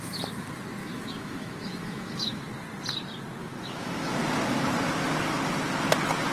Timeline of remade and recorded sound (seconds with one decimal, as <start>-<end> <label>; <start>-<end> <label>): 0.0-0.8 recorded; 0.8-2.4 remade; 2.4-3.4 recorded; 3.4-4.2 remade; 4.2-6.3 recorded